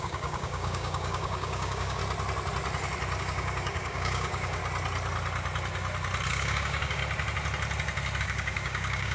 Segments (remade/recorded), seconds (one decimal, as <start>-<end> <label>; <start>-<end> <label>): 0.0-2.0 remade; 2.0-3.2 recorded; 3.2-4.6 remade; 4.6-6.3 recorded; 6.3-7.0 remade; 7.0-8.2 recorded; 8.2-9.1 remade